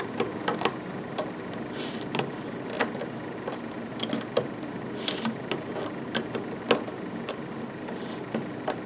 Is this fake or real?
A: real